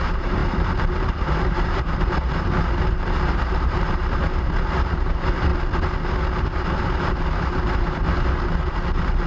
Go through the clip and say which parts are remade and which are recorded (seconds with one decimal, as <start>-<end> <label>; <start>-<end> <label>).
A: 0.0-5.5 remade; 5.5-6.4 recorded; 6.4-9.3 remade